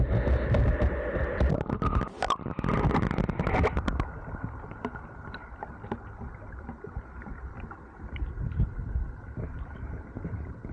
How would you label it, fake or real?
fake